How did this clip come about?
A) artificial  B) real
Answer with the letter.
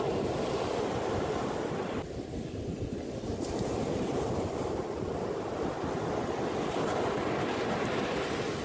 B